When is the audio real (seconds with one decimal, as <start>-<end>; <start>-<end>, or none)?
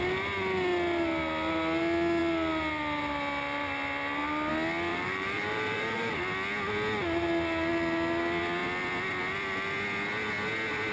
0.0-4.9; 6.1-10.9